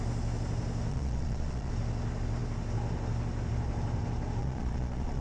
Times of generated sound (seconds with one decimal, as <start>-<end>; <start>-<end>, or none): 0.9-1.7; 4.4-5.2